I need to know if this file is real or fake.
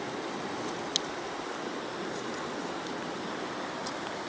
real